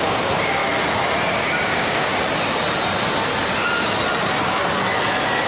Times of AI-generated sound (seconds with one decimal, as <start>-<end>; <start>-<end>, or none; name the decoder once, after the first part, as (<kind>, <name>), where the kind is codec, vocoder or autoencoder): 0.0-0.6 (codec, DAC); 1.3-2.1